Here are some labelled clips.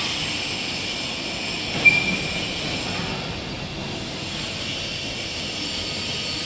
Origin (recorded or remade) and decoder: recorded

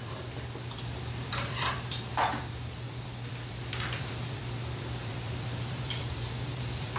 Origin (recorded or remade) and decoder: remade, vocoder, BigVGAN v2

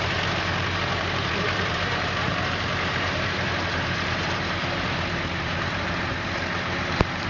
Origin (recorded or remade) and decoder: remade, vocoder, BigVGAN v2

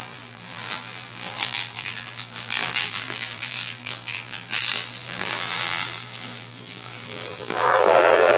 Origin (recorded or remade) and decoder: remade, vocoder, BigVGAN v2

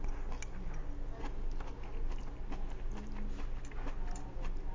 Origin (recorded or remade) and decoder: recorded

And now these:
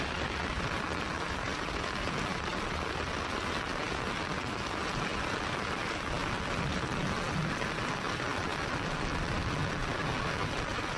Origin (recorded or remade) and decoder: recorded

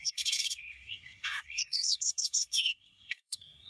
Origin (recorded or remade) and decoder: remade, codec, SNAC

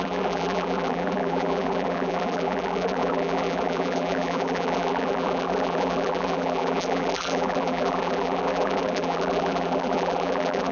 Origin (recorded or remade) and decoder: remade, vocoder, BigVGAN v2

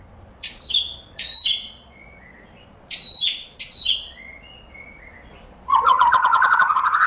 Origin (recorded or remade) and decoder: remade, vocoder, Vocos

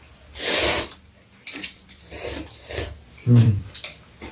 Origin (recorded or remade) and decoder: remade, vocoder, BigVGAN v2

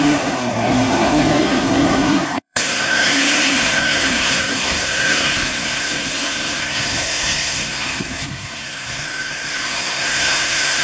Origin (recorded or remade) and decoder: remade, codec, SNAC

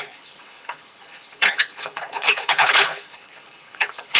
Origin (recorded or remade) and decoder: remade, codec, HILCodec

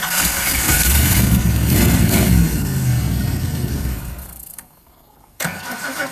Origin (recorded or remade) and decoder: remade, codec, SNAC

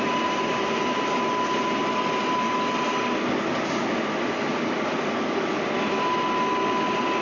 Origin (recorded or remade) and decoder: recorded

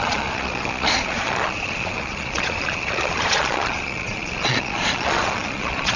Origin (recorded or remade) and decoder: remade, vocoder, Vocos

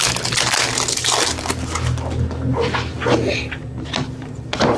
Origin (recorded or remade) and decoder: recorded